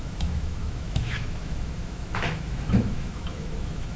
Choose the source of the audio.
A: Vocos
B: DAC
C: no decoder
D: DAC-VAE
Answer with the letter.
D